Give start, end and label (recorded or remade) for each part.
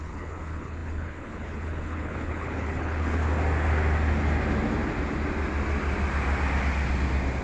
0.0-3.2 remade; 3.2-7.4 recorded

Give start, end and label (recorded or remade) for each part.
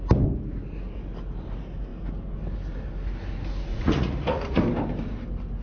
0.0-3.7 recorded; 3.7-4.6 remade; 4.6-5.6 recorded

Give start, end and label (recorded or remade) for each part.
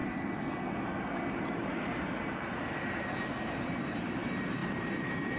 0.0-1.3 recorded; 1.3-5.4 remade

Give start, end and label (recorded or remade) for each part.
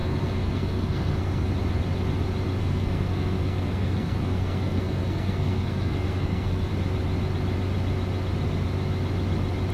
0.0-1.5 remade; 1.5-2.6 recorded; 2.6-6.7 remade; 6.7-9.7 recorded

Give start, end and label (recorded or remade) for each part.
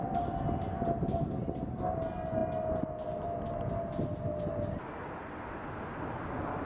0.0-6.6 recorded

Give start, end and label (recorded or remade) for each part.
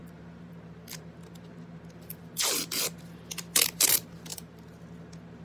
0.0-1.5 remade; 1.5-4.3 recorded; 4.3-4.8 remade; 4.8-5.4 recorded